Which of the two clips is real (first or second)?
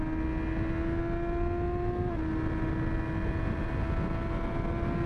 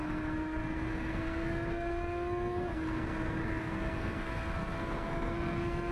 first